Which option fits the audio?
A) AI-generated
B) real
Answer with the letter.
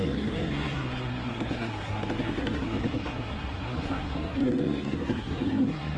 A